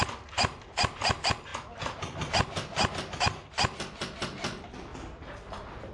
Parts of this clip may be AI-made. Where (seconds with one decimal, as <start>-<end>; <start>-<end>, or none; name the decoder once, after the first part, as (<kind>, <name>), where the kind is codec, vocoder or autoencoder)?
none